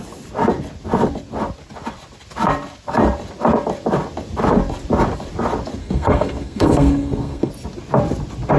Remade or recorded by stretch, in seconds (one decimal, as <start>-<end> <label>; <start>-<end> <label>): 0.0-5.8 recorded; 5.8-7.5 remade; 7.5-8.6 recorded